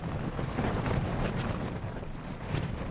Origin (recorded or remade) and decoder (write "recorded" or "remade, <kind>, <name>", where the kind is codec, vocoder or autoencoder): remade, vocoder, BigVGAN v2